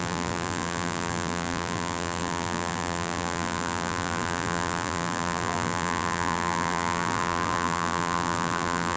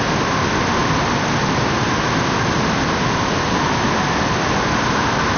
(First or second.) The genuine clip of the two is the second